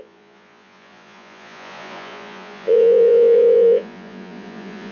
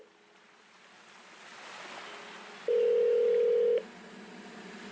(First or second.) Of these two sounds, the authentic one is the second